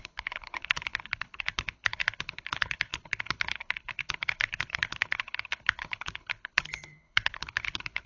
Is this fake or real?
fake